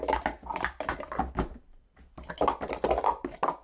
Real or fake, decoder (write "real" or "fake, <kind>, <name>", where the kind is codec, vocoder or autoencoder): real